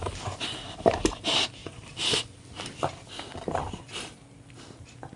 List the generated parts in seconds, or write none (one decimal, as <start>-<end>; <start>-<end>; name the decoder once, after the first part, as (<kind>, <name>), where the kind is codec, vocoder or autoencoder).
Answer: 0.0-1.6 (vocoder, BigVGAN v2); 4.7-5.2